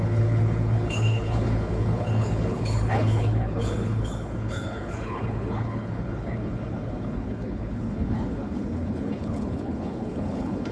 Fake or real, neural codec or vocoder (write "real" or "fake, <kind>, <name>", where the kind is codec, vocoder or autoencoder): fake, codec, HILCodec